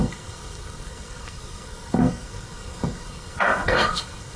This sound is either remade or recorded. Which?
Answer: remade